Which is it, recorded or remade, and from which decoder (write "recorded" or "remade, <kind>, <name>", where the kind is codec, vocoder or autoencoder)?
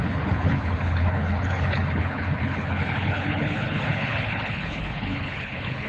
remade, codec, HILCodec